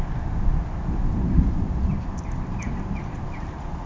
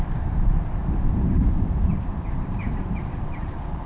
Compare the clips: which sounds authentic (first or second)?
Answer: first